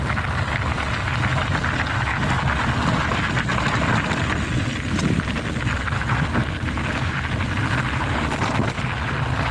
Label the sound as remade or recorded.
recorded